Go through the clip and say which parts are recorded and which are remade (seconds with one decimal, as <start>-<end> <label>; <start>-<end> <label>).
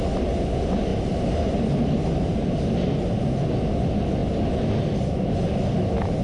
0.0-6.2 recorded